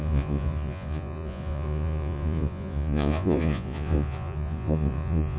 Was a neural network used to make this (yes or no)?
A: yes